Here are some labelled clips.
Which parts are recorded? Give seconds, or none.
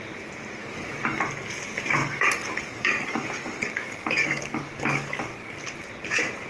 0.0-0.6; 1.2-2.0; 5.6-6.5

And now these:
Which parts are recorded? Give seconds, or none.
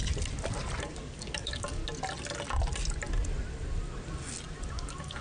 0.0-0.8; 1.8-4.7